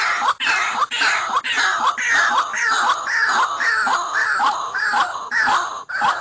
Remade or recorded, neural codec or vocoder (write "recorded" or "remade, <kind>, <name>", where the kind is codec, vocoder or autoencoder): recorded